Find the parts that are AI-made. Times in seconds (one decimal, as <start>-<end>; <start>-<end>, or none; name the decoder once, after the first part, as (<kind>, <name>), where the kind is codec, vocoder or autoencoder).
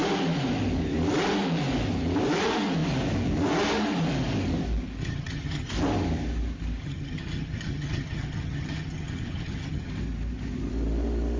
5.0-5.7 (vocoder, HiFi-GAN); 6.8-9.9